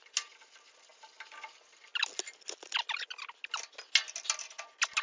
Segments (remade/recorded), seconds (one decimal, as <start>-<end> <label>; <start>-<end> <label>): 0.0-5.0 recorded